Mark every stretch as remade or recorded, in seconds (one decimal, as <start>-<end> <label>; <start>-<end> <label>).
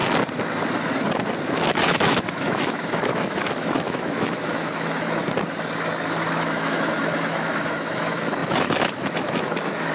0.0-1.9 recorded; 1.9-5.2 remade; 5.2-6.3 recorded; 6.3-9.9 remade